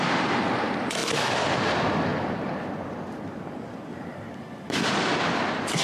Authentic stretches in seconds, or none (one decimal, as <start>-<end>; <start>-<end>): 0.0-3.9; 4.8-5.8